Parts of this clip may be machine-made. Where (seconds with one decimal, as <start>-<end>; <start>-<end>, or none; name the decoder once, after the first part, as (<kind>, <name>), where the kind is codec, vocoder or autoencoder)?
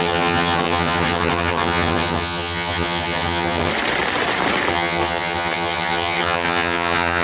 0.0-3.7 (vocoder, HiFi-GAN); 4.7-7.2